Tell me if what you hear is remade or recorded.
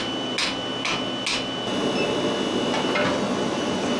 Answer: recorded